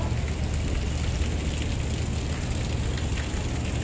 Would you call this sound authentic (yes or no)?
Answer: yes